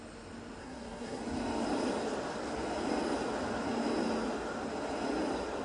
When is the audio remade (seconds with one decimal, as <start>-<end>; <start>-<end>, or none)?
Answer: 0.6-1.2

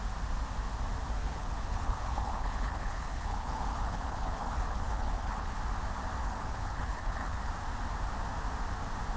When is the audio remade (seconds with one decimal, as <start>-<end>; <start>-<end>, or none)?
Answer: 1.2-5.6; 6.2-7.5